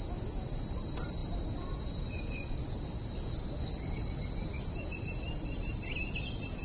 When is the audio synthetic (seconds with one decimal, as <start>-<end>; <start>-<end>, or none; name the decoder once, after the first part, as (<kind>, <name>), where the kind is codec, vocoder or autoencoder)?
none